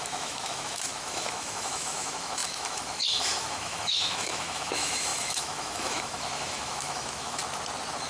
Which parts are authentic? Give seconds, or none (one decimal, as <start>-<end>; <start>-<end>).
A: 7.4-8.1

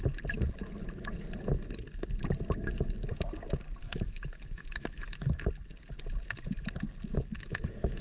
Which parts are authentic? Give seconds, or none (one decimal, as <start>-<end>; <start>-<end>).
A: 0.0-3.8; 5.4-7.3

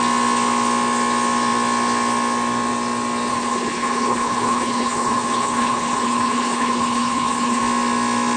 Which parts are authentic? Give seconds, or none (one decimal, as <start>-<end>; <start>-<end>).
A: 0.0-3.3; 7.6-8.4

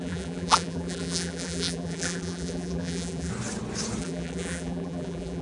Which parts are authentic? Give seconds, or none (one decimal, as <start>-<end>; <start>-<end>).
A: 3.3-4.0